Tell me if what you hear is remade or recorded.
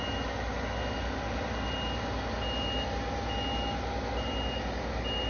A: recorded